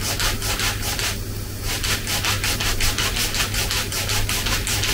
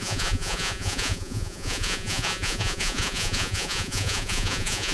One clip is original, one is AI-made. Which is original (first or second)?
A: first